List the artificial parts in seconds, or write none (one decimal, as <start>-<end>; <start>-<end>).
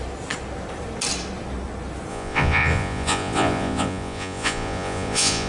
2.1-5.5